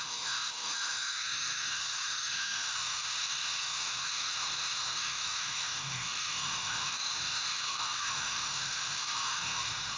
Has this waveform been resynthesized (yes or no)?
yes